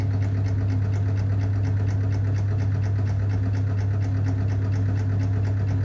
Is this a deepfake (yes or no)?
no